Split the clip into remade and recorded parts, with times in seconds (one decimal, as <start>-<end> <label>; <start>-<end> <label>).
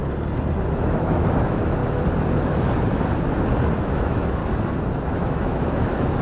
0.0-0.7 recorded; 0.7-1.8 remade; 1.8-3.8 recorded; 3.8-4.4 remade; 4.4-5.1 recorded; 5.1-6.2 remade